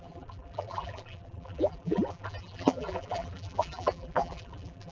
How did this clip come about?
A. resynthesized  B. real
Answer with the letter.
A